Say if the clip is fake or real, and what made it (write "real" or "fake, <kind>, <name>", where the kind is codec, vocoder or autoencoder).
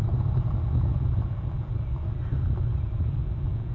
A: real